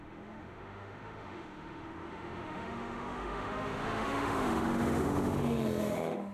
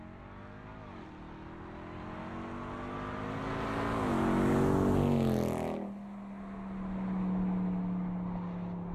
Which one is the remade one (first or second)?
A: first